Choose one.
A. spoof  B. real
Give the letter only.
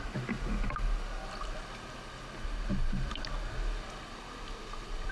B